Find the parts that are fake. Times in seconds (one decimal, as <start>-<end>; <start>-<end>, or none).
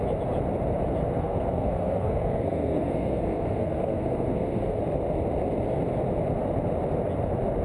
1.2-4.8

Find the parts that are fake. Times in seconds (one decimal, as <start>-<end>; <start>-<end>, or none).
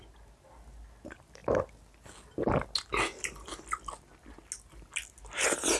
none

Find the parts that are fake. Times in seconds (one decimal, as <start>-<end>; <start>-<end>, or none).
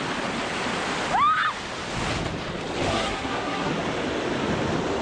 2.9-3.7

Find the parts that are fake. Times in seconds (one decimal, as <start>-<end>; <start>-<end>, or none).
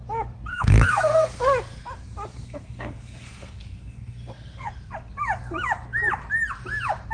0.5-1.4; 2.3-4.7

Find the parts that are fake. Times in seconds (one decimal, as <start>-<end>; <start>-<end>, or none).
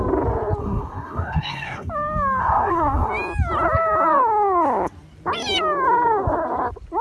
0.6-1.9; 2.4-3.1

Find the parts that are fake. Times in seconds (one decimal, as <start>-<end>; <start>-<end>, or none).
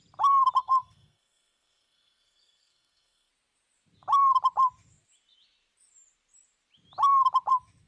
0.6-3.3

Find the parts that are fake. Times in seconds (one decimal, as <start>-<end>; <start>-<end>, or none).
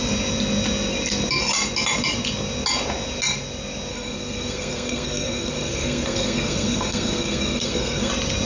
3.9-8.1